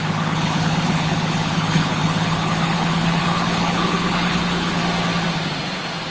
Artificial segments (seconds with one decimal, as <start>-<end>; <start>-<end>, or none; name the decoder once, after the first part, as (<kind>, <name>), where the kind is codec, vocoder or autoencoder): 0.0-4.8 (codec, HILCodec)